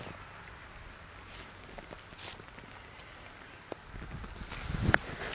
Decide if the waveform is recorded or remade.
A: recorded